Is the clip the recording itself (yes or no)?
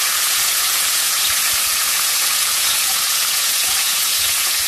no